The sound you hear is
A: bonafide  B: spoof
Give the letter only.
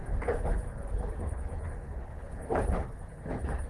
B